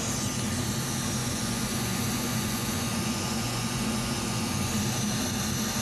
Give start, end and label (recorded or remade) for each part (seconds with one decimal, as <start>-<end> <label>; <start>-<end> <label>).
0.0-1.2 recorded; 1.2-4.7 remade; 4.7-5.8 recorded